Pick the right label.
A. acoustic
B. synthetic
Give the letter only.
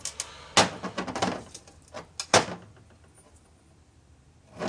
A